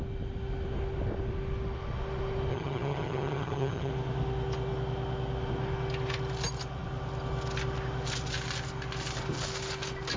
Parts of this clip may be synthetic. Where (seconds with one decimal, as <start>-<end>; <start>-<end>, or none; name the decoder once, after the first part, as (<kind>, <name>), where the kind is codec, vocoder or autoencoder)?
2.5-3.9 (vocoder, HiFi-GAN)